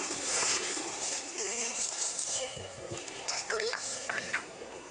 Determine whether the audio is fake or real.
fake